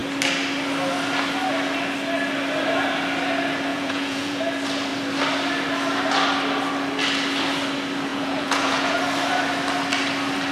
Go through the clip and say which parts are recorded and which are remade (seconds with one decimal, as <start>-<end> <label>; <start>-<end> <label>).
0.0-3.7 recorded; 3.7-4.4 remade; 4.4-8.1 recorded; 8.1-9.0 remade; 9.0-10.5 recorded